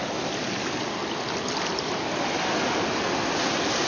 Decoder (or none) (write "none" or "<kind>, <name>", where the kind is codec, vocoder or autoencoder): none